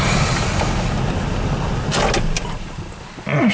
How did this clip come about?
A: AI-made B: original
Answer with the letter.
B